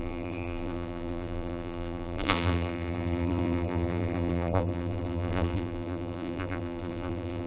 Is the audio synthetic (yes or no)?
yes